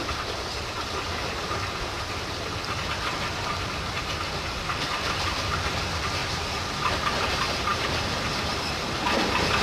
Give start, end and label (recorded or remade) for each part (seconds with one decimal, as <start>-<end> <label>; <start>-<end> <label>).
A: 0.0-9.6 recorded